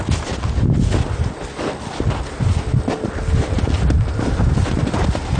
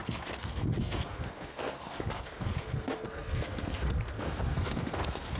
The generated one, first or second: second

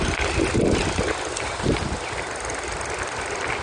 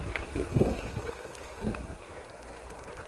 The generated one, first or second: second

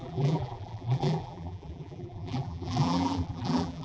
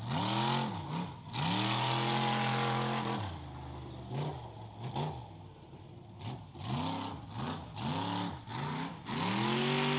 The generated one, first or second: first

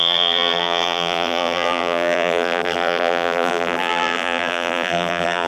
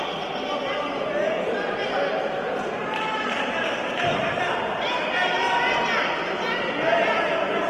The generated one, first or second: first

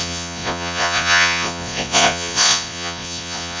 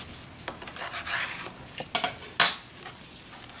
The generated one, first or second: first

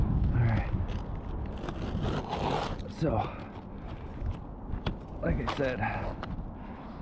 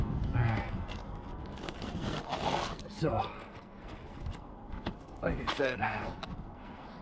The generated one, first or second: second